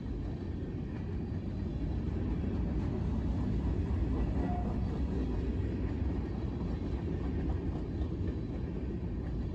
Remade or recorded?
recorded